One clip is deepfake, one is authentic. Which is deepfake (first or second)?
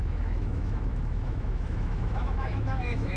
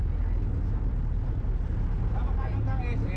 first